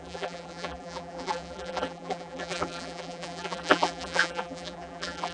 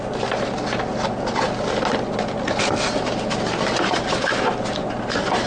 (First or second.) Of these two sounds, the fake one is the first